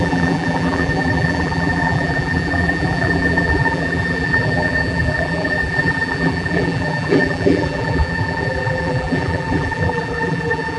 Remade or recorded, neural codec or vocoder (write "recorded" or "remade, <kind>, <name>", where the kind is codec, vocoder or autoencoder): remade, vocoder, BigVGAN v2